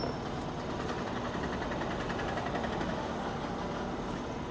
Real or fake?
real